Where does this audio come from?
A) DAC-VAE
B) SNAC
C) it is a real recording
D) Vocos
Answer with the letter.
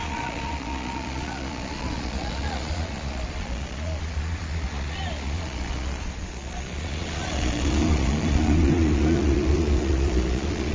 D